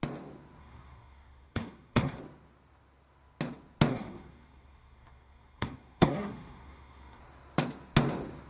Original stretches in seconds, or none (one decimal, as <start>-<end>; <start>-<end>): 0.0-0.6; 2.2-3.9; 7.2-8.5